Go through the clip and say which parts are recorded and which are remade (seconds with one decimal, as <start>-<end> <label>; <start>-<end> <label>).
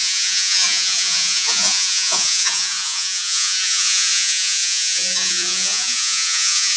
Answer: 0.0-6.8 remade